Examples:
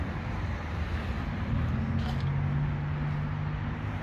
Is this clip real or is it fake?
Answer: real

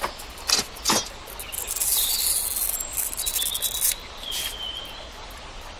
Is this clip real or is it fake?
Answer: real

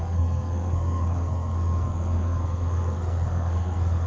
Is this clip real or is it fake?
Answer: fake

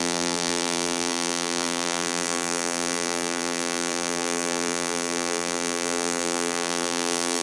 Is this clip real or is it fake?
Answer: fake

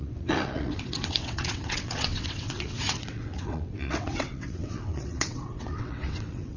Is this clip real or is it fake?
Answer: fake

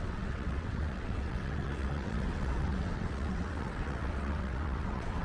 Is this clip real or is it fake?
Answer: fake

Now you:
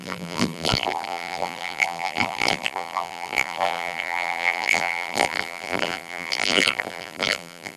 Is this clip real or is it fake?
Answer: fake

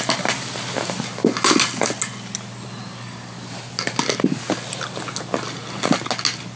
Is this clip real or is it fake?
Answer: real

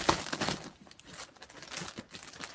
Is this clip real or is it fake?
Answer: real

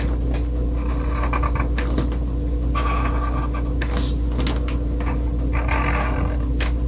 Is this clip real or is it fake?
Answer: real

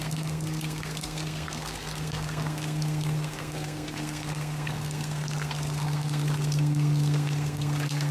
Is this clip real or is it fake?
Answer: fake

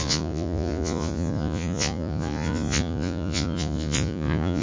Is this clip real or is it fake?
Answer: fake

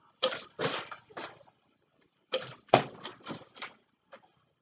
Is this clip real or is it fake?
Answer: real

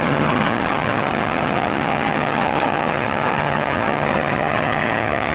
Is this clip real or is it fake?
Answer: fake